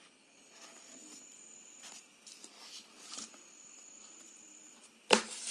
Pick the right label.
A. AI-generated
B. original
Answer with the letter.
B